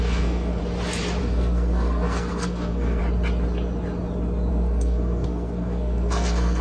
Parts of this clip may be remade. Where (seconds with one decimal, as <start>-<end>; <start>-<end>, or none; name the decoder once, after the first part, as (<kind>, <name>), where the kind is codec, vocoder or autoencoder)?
0.0-0.6 (codec, SNAC); 1.2-3.0; 4.5-6.6